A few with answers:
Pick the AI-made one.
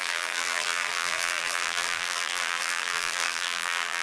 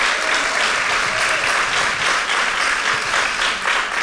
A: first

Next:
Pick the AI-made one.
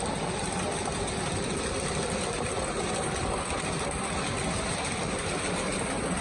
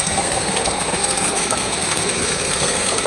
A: second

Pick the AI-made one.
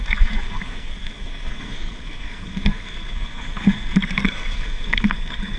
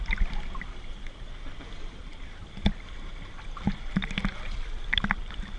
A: first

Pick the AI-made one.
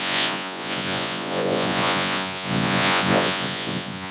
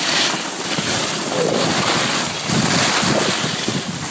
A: first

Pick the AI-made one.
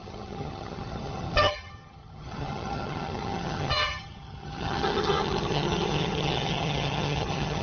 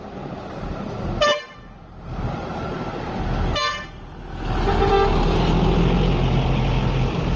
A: first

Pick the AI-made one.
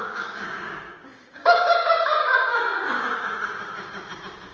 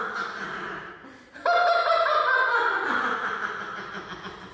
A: first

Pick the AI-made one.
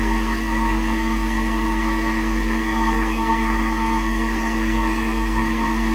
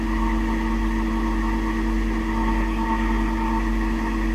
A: first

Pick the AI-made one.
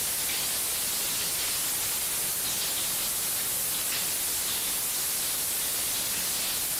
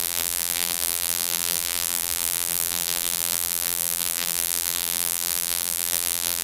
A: second